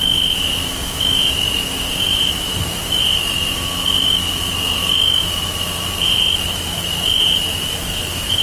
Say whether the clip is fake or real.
fake